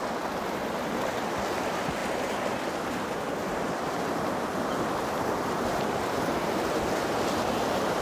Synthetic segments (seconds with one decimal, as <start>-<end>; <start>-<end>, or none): none